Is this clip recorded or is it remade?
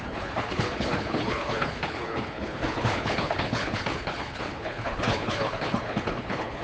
remade